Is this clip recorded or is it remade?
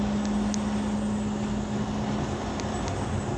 recorded